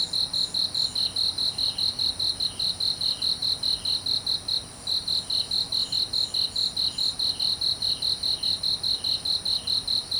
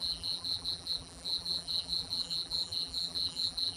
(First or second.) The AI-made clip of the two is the second